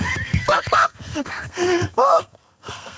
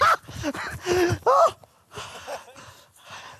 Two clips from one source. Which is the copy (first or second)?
first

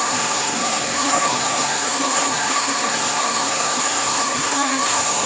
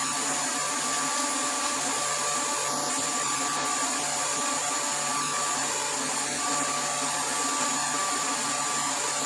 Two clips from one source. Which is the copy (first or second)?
first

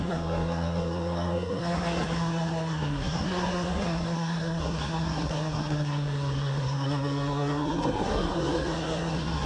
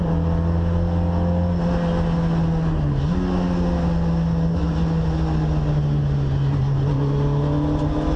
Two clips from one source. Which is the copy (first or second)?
first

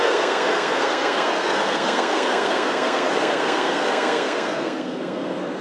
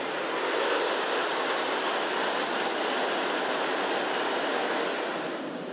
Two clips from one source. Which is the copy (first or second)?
first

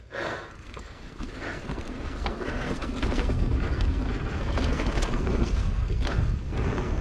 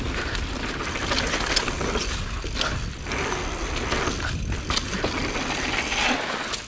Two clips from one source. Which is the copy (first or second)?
first